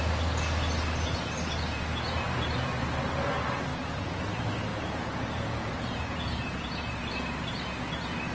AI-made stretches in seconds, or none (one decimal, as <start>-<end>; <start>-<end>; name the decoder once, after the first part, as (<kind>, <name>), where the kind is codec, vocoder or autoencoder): 3.7-4.2 (vocoder, Vocos); 4.7-7.1

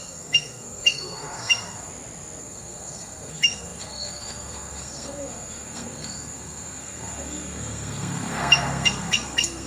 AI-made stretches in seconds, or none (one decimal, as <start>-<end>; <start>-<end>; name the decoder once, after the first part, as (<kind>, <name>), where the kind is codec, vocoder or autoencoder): 0.0-1.9 (codec, SNAC); 2.4-9.7

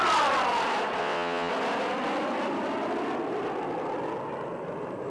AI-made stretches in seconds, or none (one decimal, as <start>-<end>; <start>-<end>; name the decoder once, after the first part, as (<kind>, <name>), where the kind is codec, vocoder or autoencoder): 1.0-1.5 (vocoder, WaveNeXt)